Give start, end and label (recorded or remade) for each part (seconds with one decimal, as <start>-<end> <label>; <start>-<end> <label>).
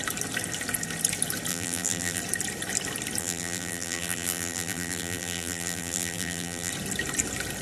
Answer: 0.0-1.5 recorded; 1.5-2.2 remade; 2.2-3.2 recorded; 3.2-6.7 remade; 6.7-7.6 recorded